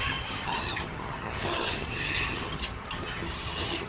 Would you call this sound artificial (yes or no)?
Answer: yes